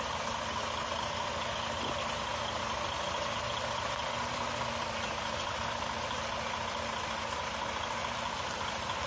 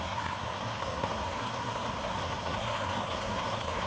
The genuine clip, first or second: first